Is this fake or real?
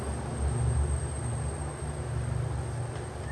real